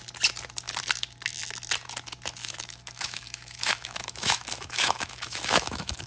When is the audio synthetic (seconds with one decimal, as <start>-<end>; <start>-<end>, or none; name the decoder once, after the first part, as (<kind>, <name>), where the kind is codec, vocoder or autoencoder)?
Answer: 2.4-6.1 (autoencoder, DAC-VAE)